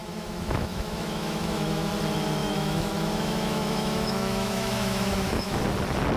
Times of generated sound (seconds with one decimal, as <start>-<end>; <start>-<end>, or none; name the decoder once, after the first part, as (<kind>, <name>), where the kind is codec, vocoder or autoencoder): 0.0-1.9 (autoencoder, DAC-VAE); 2.4-5.6